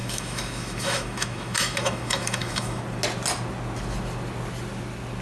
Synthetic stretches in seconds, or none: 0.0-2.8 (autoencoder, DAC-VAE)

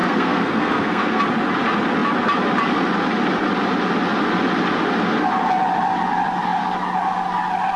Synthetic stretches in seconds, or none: 0.0-1.2 (codec, SNAC)

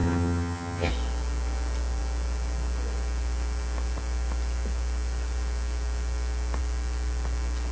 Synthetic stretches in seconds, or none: 0.0-0.9 (vocoder, HiFi-GAN)

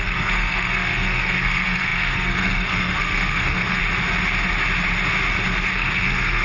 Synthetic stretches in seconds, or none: 0.0-3.8 (codec, SNAC); 5.7-6.4

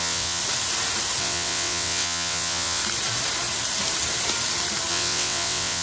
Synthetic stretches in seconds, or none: 0.0-0.4 (vocoder, WaveNeXt); 1.2-2.8; 4.9-5.8

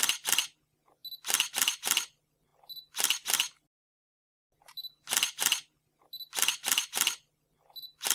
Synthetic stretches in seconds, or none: none